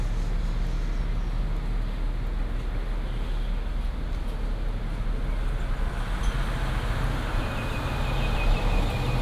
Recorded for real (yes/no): yes